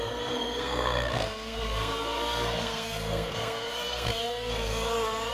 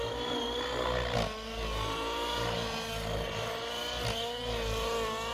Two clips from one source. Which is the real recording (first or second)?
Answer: second